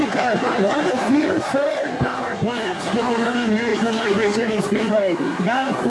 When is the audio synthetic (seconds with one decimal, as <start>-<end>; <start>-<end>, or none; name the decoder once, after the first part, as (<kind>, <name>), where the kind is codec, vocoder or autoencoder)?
0.0-5.9 (codec, SNAC)